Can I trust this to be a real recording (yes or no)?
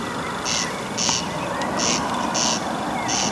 yes